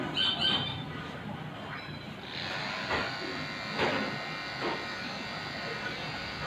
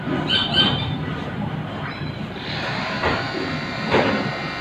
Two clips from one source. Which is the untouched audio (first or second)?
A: first